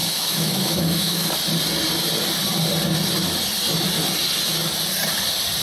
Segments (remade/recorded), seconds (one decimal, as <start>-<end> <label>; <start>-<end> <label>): 0.0-1.3 remade; 1.3-5.6 recorded